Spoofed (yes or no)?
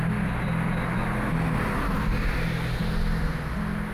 no